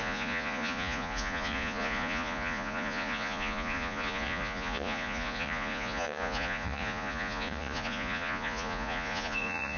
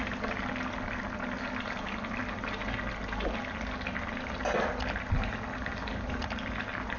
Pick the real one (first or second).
second